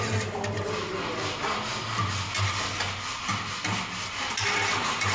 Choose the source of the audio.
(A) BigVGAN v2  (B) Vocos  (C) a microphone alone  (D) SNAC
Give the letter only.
C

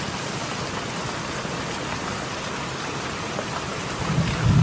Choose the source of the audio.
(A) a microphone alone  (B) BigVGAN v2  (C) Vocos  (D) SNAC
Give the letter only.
A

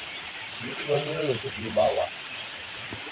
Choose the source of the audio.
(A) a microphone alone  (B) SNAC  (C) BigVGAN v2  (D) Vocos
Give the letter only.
D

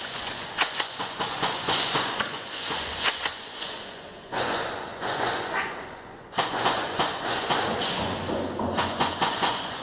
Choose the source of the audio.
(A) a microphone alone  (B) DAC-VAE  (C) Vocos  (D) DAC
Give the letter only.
C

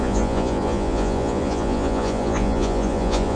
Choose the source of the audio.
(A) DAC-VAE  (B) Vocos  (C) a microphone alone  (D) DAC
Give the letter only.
B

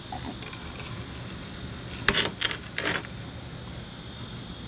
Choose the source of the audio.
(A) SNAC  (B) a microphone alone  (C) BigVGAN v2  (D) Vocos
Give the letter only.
B